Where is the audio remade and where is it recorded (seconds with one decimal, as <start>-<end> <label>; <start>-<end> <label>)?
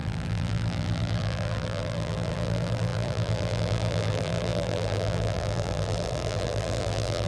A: 0.0-7.3 remade